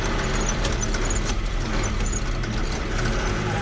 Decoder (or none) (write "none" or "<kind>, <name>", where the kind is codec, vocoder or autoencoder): none